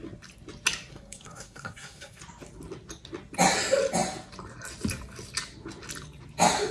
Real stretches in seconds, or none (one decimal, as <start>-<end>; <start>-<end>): 0.0-0.9; 2.2-6.7